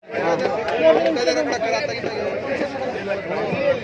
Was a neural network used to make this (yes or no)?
no